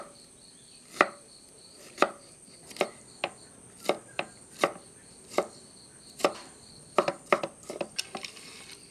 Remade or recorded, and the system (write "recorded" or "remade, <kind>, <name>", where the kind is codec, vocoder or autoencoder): remade, vocoder, BigVGAN v2